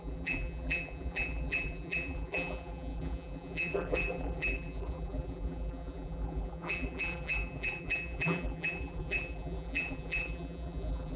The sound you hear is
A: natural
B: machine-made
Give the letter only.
B